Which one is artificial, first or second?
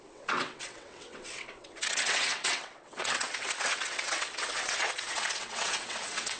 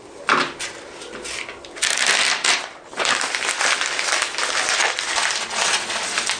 first